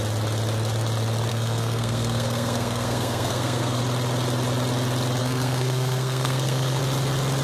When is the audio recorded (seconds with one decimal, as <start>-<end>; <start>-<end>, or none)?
0.0-1.3; 3.8-5.2; 6.8-7.4